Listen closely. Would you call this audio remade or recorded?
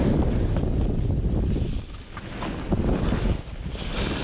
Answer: recorded